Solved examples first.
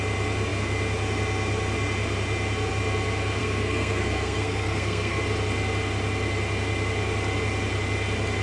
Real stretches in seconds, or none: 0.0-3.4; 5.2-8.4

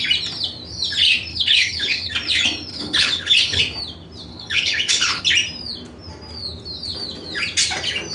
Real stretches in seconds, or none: 0.0-1.3; 2.1-2.7; 3.6-4.3; 5.2-8.1

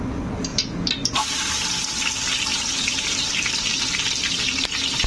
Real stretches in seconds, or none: 0.0-0.5; 1.7-2.5